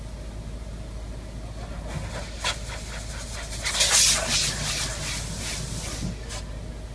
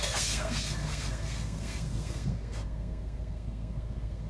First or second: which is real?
first